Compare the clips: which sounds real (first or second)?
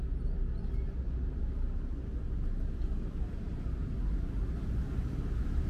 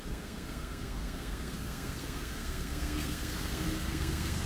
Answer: first